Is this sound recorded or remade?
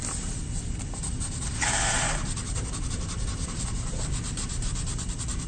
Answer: remade